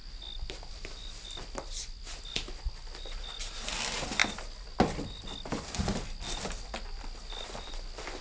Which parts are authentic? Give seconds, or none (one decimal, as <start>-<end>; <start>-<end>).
0.0-8.2